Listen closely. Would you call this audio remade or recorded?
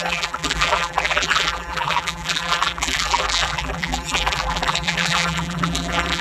remade